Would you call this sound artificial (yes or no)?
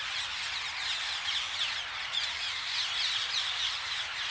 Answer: no